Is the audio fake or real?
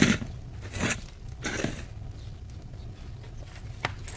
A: real